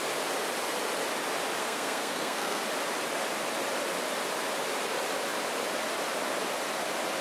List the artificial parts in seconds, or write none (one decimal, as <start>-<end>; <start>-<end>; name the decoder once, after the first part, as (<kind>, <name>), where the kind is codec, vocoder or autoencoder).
1.6-2.6 (codec, SNAC)